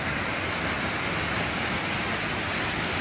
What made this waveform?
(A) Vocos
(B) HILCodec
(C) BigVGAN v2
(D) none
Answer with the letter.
D